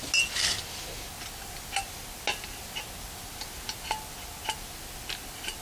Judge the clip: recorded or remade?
recorded